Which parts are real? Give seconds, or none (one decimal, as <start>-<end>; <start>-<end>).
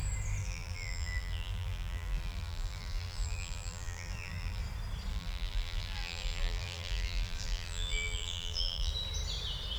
0.0-0.4; 4.6-5.1; 8.9-9.8